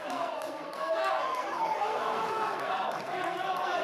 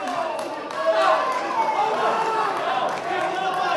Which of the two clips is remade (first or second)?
first